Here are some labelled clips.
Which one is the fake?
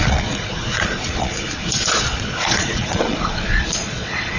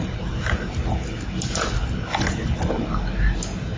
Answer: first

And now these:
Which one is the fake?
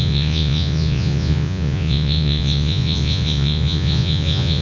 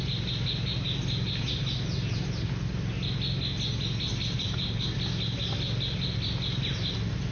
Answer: first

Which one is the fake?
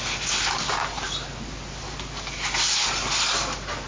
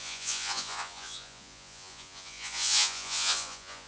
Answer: second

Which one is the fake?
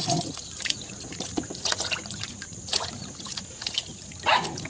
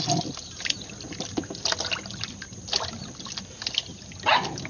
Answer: first